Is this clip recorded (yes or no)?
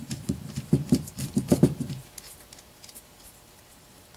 no